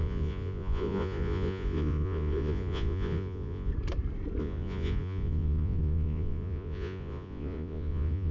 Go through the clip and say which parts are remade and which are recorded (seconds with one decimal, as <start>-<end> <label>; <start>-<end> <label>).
0.0-3.7 remade; 3.7-4.4 recorded; 4.4-8.3 remade